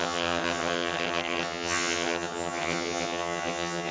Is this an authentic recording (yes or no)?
no